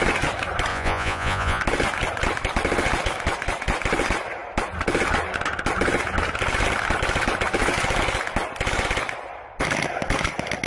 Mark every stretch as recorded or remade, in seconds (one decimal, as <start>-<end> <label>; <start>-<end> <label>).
0.0-0.7 recorded; 0.7-1.6 remade; 1.6-10.7 recorded